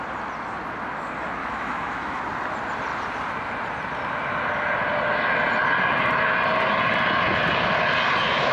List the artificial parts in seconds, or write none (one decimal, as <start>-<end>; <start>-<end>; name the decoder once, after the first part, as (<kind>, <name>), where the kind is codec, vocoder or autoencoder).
1.4-2.2 (autoencoder, DAC-VAE)

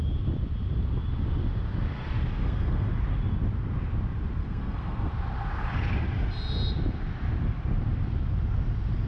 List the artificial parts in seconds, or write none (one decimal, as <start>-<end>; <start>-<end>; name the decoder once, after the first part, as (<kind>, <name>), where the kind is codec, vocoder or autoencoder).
2.4-2.9 (codec, SNAC); 4.4-5.1

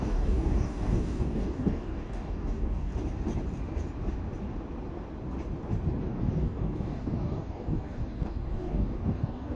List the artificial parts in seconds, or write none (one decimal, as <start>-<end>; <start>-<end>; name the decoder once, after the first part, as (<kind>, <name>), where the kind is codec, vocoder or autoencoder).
0.0-2.9 (codec, DAC); 6.0-9.6

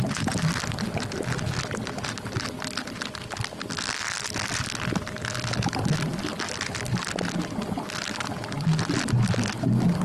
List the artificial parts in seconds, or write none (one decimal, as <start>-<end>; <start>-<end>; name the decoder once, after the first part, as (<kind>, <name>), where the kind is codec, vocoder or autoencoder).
none

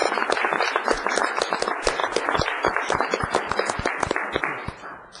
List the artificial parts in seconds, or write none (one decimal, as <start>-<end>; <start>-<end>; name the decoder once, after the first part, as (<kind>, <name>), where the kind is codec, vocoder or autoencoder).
none